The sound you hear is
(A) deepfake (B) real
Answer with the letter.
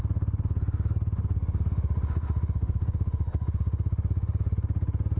B